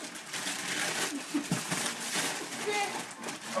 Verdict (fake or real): real